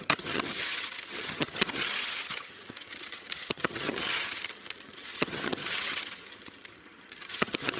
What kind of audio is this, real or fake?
fake